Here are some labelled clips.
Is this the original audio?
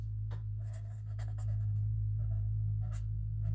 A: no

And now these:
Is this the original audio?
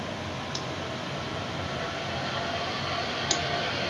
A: yes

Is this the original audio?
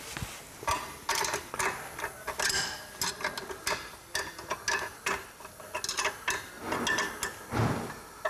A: yes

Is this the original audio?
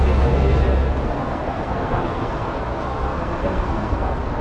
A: no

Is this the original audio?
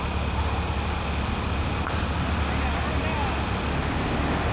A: yes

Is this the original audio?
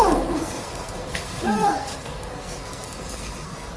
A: no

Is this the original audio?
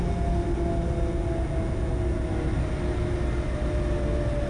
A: yes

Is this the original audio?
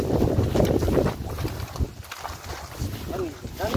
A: yes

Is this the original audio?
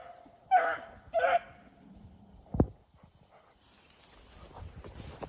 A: yes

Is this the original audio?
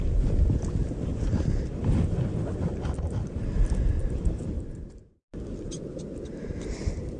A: yes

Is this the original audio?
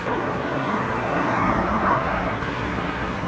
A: no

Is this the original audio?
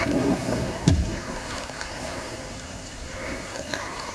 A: no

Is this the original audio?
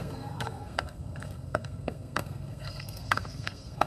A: no